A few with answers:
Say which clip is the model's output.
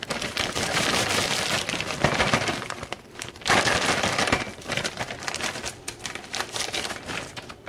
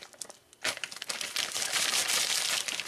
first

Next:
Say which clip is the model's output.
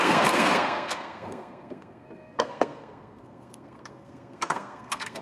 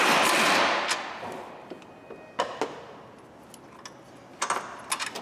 first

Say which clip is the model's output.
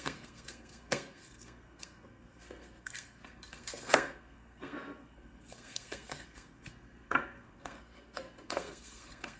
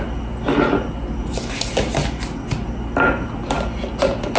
first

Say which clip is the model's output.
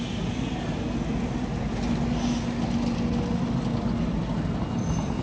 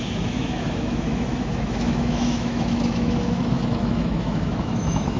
second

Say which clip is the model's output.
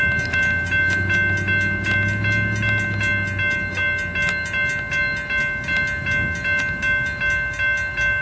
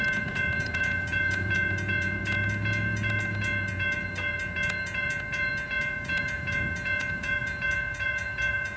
second